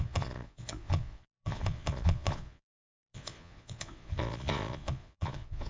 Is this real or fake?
fake